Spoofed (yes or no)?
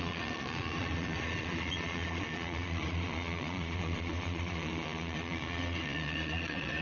yes